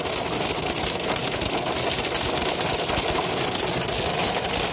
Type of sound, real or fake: real